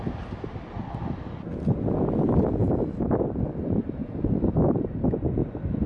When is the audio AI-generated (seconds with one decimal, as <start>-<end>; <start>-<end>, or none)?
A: none

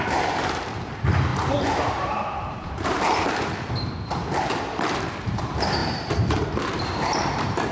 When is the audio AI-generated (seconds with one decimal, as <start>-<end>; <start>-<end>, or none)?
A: 0.0-7.7

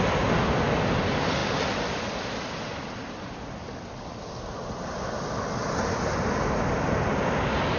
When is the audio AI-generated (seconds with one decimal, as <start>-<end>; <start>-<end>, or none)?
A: none

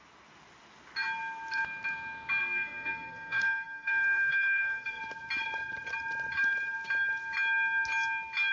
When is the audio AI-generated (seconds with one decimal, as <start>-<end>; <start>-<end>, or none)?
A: 2.4-5.0

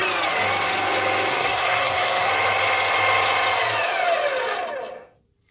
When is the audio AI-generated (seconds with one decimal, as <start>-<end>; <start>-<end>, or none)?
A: 1.3-2.3

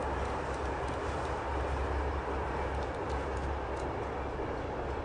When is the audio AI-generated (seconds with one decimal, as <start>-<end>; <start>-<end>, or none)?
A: none

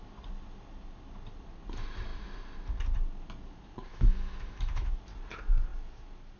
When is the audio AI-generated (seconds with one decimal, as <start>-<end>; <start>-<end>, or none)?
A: 3.9-5.0

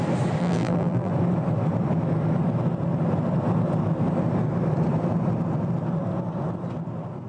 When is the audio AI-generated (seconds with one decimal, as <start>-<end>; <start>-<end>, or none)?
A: 0.4-1.1